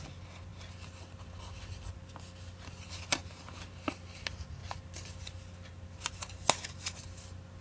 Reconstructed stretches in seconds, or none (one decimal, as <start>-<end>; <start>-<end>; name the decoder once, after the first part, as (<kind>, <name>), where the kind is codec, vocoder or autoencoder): none